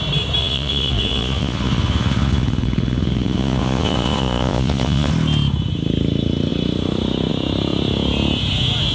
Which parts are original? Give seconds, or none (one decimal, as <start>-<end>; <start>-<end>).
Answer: 0.0-0.4; 5.1-8.9